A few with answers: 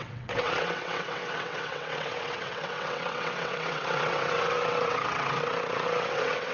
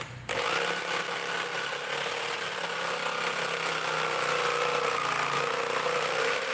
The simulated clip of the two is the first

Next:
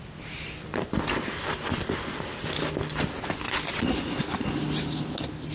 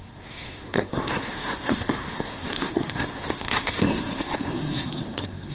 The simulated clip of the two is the second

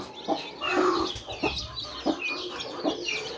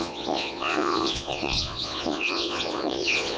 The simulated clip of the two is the second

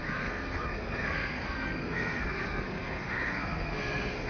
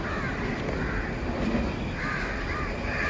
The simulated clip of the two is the first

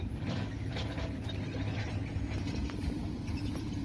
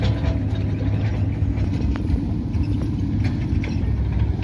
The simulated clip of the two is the first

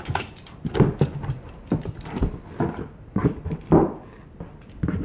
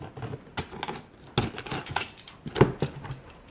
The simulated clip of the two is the first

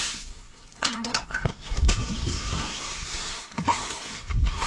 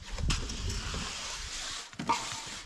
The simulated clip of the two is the first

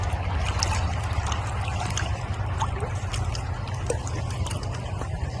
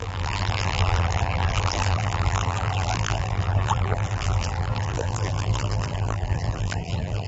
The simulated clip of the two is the second